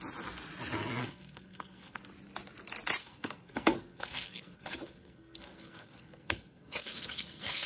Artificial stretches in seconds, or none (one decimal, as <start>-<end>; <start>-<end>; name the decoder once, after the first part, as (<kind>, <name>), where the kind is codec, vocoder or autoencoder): 1.0-2.0 (codec, SNAC); 3.0-7.7